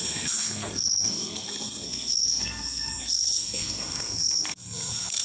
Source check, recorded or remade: remade